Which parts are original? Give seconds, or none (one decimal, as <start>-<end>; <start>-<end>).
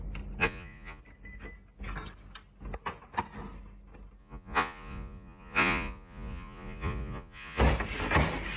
0.0-0.4; 1.0-4.2; 7.6-8.6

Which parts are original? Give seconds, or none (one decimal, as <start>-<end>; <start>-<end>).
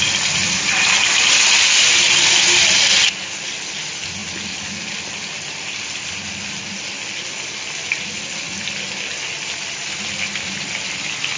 0.0-11.4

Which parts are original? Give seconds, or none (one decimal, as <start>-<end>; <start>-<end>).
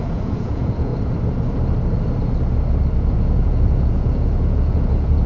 0.9-3.1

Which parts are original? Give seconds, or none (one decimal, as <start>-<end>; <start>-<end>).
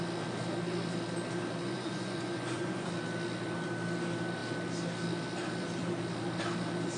0.0-1.6; 2.9-7.0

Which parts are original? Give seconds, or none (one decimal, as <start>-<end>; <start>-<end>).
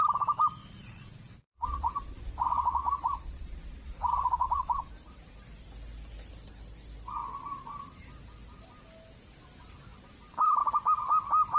0.0-0.6; 4.9-11.6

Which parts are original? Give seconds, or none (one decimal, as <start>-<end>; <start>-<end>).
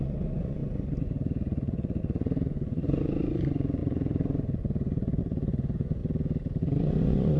6.0-6.6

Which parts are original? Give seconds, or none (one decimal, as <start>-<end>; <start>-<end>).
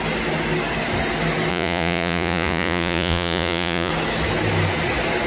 0.0-1.5; 3.9-5.3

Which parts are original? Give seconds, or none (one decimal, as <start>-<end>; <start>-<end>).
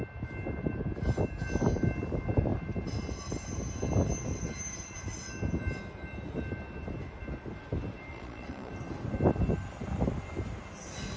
0.0-8.1; 8.7-11.2